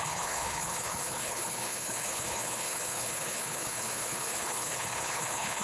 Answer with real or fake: fake